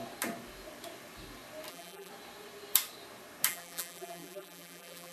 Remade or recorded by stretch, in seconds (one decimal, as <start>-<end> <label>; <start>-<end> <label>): 0.0-1.7 recorded; 1.7-2.1 remade; 2.1-3.5 recorded; 3.5-5.1 remade